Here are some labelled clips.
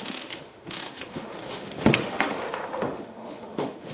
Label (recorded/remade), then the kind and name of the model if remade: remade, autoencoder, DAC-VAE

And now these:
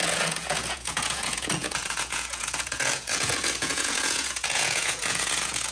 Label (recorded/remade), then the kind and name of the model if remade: remade, vocoder, Vocos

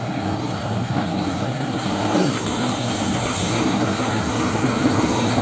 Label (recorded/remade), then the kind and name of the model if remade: remade, codec, SNAC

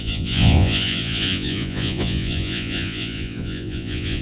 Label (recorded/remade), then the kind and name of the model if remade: remade, vocoder, Vocos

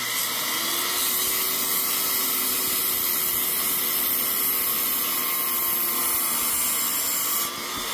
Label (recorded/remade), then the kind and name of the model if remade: recorded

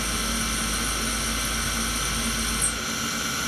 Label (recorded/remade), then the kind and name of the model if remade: recorded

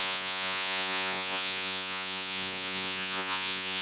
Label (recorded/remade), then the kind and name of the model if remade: remade, vocoder, Vocos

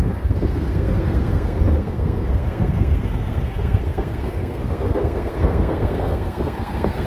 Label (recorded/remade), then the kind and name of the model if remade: remade, codec, SNAC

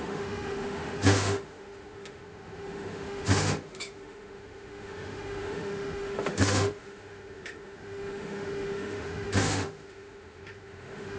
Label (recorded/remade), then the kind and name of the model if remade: remade, autoencoder, DAC-VAE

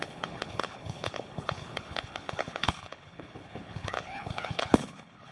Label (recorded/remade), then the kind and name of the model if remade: remade, codec, HILCodec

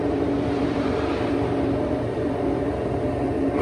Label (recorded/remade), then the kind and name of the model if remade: remade, vocoder, BigVGAN v2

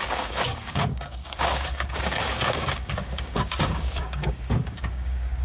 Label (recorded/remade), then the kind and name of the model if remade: remade, codec, DAC